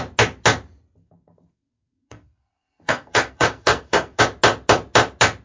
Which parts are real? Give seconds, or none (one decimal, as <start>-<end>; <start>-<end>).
0.0-1.0; 4.2-5.4